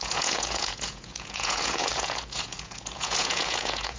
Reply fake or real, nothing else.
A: fake